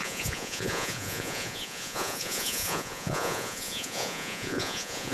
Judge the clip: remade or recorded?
remade